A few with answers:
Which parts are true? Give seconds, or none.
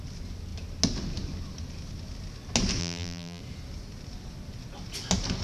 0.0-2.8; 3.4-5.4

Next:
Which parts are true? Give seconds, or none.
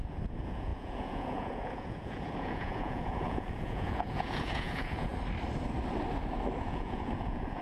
5.1-6.6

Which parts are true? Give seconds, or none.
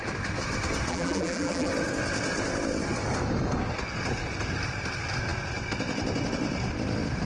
0.0-0.9; 1.7-7.2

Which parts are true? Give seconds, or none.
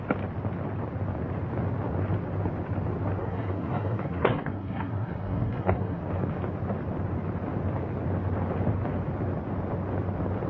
0.0-3.2; 6.0-10.5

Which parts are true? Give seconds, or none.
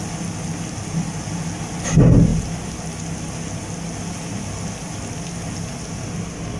0.0-6.6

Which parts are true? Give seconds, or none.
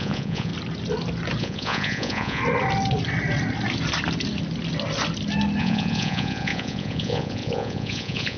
0.5-1.4; 2.4-5.6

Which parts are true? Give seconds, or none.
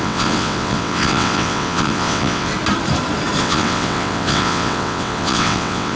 2.5-3.4